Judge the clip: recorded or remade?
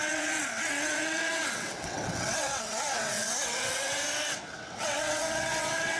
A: remade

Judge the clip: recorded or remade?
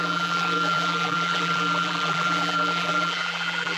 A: remade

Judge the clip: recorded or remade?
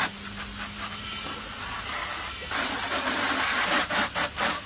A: recorded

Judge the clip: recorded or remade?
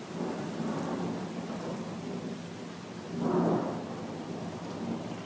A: recorded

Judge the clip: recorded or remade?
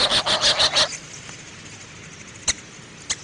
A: recorded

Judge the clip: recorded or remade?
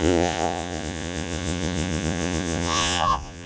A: remade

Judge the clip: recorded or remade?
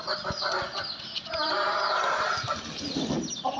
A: recorded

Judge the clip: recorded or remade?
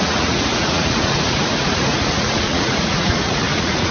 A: remade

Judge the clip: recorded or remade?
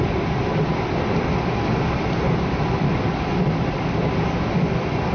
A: remade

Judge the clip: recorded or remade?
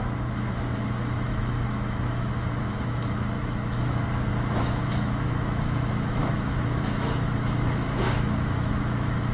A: remade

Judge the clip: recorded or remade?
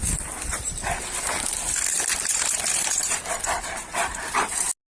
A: recorded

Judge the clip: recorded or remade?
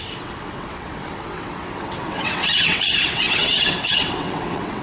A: remade